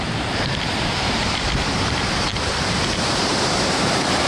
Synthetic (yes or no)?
yes